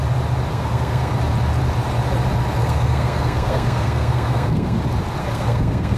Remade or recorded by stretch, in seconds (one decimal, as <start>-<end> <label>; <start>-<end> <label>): 0.0-0.5 recorded; 0.5-1.1 remade; 1.1-2.6 recorded; 2.6-4.8 remade; 4.8-5.2 recorded; 5.2-6.0 remade